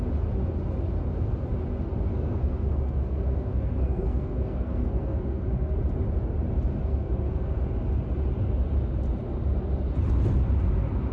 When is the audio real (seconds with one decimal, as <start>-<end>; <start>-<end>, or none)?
0.0-2.1; 5.8-6.8; 7.6-11.1